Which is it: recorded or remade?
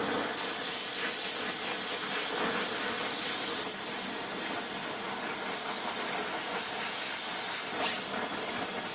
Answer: recorded